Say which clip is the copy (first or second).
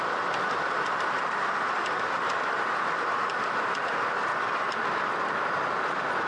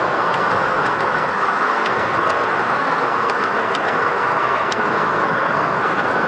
second